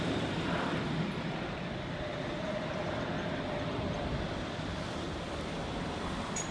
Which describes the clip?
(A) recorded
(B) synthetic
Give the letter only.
B